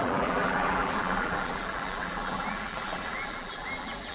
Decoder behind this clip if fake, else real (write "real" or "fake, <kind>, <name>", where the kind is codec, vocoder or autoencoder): fake, vocoder, BigVGAN v2